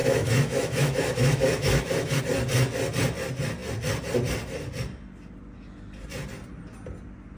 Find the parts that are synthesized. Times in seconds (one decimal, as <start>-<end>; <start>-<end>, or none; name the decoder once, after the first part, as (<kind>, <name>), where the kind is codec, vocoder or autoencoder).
0.0-2.2 (autoencoder, DAC-VAE)